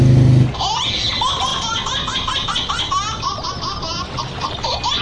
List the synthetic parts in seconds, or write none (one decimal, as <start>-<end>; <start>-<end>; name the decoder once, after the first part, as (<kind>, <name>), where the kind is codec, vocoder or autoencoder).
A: none